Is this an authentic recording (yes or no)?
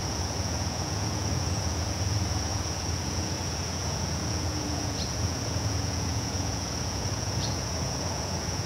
no